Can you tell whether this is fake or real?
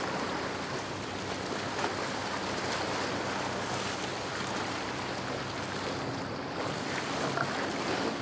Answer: real